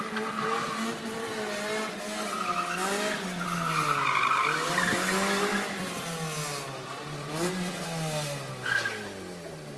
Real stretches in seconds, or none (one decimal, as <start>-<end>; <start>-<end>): 0.0-9.8